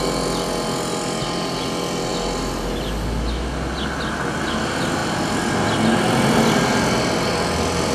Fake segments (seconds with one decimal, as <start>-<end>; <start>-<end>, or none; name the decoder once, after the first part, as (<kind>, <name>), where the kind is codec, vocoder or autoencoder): none